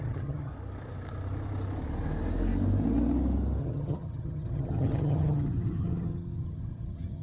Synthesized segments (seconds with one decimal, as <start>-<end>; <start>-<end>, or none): 0.0-0.5; 3.6-7.2